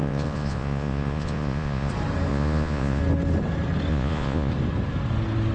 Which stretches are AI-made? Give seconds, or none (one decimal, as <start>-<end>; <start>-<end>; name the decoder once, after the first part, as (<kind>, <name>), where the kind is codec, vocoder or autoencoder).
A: 0.0-1.9 (vocoder, Vocos); 2.3-3.0; 3.9-4.5